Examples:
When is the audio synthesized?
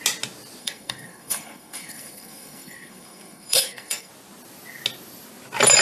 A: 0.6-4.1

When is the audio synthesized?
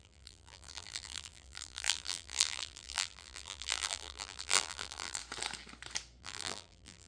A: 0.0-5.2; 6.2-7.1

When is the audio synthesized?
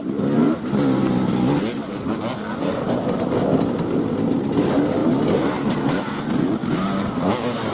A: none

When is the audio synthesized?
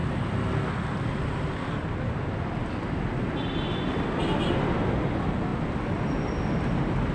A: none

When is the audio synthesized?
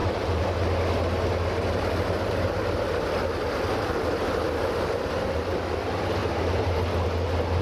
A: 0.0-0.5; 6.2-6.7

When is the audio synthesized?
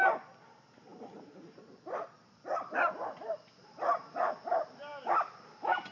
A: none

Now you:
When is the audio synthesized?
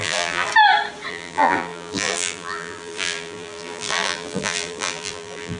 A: 0.0-0.5; 1.1-5.6